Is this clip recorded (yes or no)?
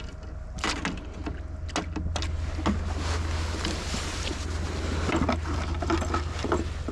yes